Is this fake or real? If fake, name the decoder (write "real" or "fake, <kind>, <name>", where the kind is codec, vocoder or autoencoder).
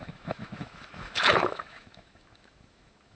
fake, autoencoder, DAC-VAE